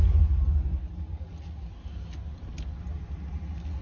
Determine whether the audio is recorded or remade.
recorded